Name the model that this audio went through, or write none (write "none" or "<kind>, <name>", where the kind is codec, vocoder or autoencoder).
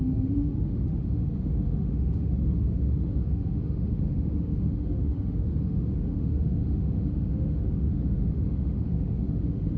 autoencoder, DAC-VAE